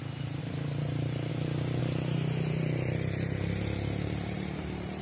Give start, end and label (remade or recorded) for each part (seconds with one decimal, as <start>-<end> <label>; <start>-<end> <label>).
0.0-0.4 recorded; 0.4-1.3 remade; 1.3-1.8 recorded; 1.8-5.0 remade